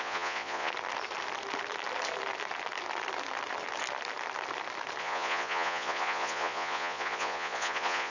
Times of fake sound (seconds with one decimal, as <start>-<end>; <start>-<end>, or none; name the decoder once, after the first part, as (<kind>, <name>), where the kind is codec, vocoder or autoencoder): 0.0-0.7 (vocoder, Vocos); 5.0-8.1